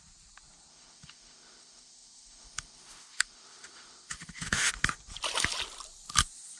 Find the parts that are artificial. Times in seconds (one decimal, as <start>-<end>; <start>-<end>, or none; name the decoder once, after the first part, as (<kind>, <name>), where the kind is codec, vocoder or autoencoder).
0.7-4.7 (autoencoder, DAC-VAE)